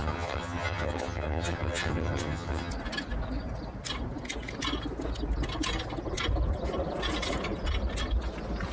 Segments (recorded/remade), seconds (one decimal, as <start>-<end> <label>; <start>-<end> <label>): 0.0-2.7 remade; 2.7-8.7 recorded